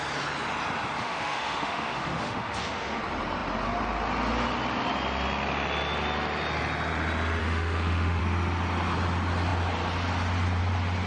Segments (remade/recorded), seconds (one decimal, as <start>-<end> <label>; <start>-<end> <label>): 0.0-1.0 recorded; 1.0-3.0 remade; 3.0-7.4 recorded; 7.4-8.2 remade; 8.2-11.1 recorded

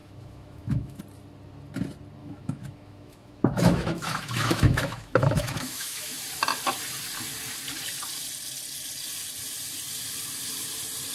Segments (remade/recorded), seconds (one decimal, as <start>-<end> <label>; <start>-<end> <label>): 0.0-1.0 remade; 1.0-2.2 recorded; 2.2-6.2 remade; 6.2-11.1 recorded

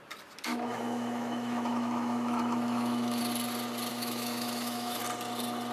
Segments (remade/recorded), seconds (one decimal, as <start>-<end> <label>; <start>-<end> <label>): 0.0-0.5 recorded; 0.5-3.2 remade; 3.2-3.9 recorded; 3.9-5.0 remade; 5.0-5.7 recorded